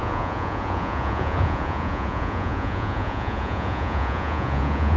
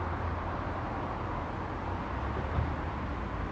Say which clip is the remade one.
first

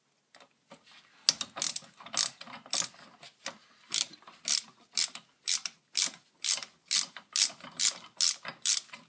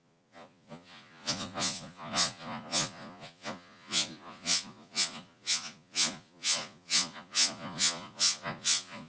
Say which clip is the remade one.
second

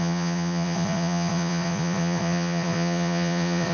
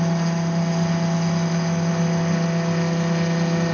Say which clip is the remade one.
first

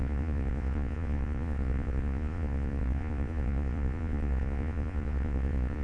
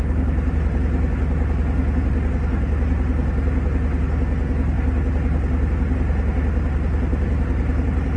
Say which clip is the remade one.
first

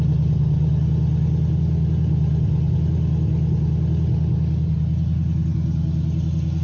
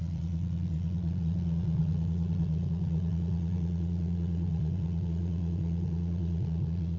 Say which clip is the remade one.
second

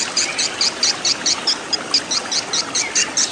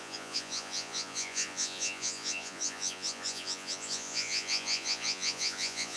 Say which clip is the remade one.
second